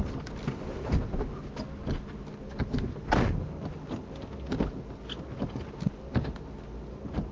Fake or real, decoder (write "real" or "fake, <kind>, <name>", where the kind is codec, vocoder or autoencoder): real